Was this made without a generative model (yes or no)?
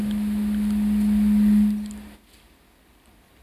yes